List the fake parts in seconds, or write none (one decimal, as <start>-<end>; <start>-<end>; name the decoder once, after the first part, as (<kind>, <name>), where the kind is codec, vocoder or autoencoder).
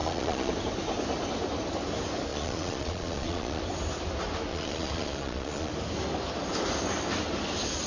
0.0-0.5 (vocoder, Vocos); 2.3-3.6; 4.5-5.7